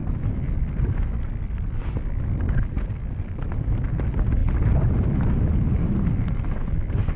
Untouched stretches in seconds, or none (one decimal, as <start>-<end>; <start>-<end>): 0.0-7.2